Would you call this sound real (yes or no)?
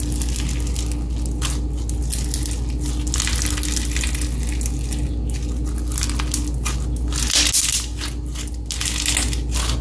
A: yes